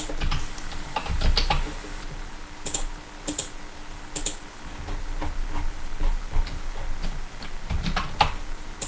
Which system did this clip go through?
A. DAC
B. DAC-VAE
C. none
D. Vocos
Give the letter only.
C